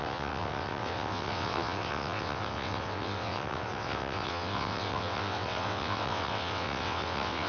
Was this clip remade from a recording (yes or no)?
yes